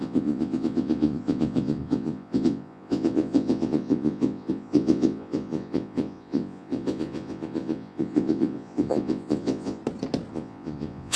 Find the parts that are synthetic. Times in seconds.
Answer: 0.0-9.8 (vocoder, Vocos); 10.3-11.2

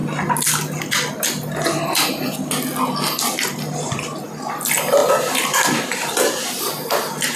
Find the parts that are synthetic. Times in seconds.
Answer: none

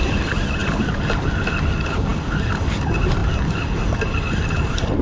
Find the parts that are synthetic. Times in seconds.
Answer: none

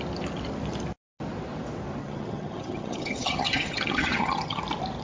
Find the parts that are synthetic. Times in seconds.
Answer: 2.0-4.6 (vocoder, HiFi-GAN)